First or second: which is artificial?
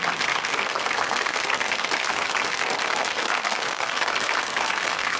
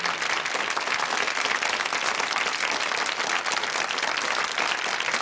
first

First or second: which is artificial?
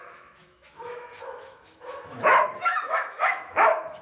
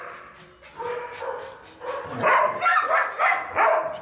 first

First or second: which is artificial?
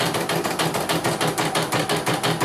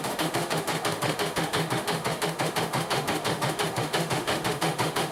second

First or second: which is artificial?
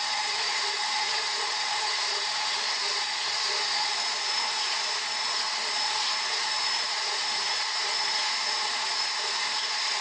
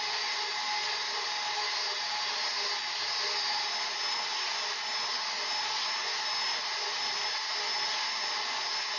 first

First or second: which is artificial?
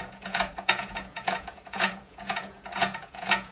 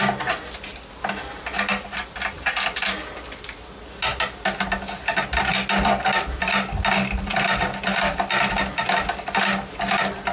first